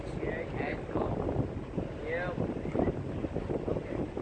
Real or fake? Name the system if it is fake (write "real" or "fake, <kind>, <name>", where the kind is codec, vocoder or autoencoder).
real